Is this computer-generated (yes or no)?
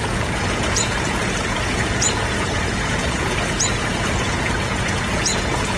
yes